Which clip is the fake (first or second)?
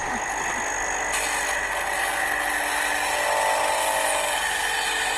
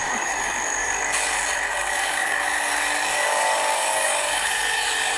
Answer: second